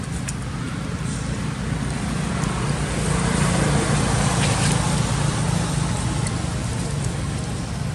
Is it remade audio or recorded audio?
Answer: recorded